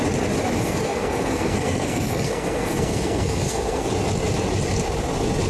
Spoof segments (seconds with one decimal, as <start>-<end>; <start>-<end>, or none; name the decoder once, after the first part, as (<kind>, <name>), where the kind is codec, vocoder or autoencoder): 0.6-3.9 (codec, SNAC)